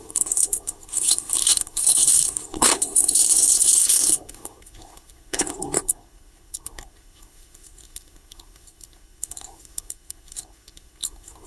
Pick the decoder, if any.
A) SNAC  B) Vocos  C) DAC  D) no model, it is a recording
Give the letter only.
A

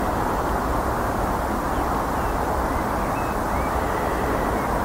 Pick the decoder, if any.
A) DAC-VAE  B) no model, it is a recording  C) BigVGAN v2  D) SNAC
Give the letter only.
B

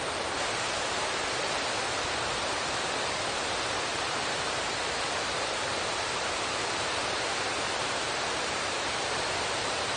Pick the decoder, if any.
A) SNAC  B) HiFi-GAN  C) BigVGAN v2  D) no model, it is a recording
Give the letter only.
C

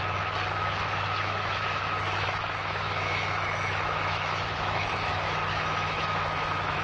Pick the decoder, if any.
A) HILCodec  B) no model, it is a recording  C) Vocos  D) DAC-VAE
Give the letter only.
D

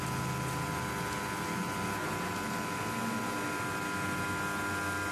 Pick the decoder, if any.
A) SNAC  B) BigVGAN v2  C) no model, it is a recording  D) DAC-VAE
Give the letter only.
C